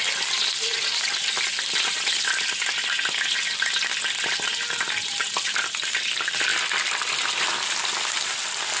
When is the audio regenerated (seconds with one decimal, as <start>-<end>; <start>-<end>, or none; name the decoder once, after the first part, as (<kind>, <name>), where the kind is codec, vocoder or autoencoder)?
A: none